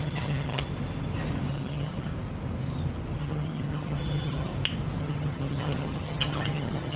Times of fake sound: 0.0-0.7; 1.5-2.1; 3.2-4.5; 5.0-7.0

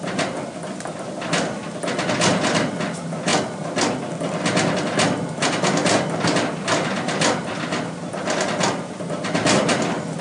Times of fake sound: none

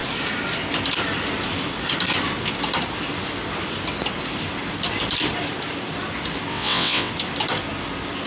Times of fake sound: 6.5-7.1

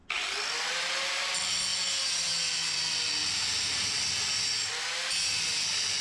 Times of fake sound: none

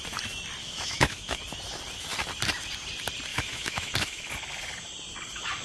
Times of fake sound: 0.6-1.4; 3.3-4.3